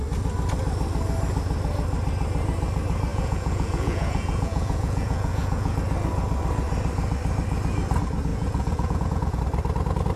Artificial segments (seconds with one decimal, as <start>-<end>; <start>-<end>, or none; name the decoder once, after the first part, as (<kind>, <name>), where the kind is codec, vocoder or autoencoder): 3.1-5.7 (vocoder, Vocos); 8.3-9.4